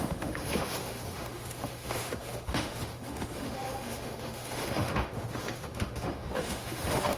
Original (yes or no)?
no